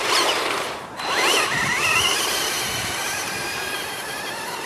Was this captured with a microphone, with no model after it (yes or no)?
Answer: no